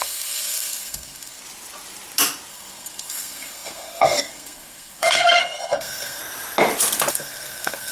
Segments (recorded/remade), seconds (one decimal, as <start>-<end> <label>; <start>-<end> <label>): 0.0-1.4 remade; 1.4-2.5 recorded; 2.5-6.2 remade; 6.2-7.1 recorded; 7.1-7.9 remade